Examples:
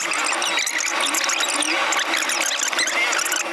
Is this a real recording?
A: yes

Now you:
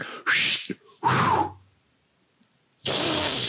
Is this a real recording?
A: yes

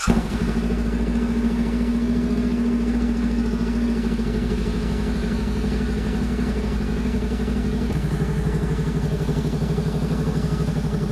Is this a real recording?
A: no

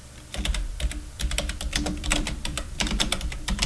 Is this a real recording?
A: no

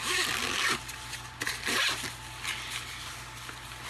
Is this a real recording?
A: yes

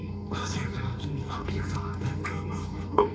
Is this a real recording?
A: no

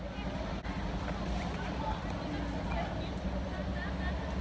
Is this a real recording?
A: yes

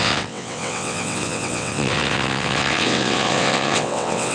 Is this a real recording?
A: no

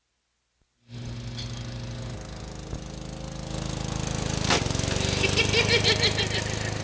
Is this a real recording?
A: yes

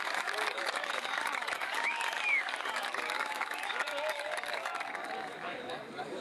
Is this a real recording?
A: no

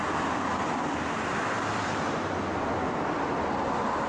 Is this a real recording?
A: yes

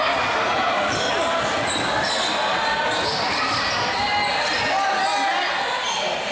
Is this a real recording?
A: yes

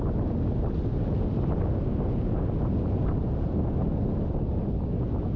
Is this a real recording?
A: yes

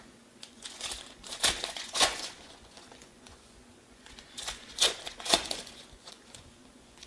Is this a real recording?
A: no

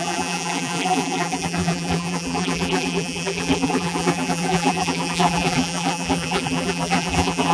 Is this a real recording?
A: no